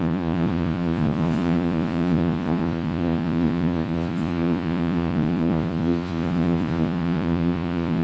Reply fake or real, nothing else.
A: fake